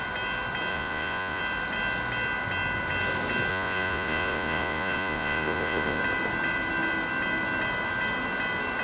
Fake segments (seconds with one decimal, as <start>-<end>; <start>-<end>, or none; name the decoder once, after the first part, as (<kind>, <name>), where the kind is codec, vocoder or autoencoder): 0.7-1.4 (vocoder, Vocos); 3.5-6.0